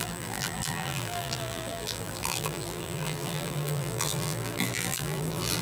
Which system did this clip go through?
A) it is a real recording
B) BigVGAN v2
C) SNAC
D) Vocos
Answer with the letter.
B